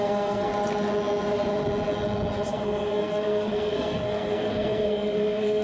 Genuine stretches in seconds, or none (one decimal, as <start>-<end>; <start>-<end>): 0.5-2.5